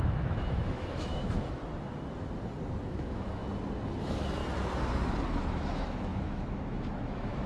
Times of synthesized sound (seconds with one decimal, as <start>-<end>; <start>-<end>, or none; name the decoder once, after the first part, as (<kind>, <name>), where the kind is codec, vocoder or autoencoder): 0.0-1.6 (autoencoder, DAC-VAE); 2.8-3.4; 4.0-4.4; 5.3-7.5